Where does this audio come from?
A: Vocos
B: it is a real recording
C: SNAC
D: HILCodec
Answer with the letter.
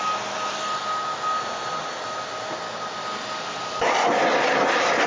B